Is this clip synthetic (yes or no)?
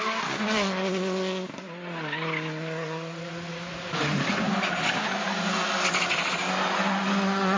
no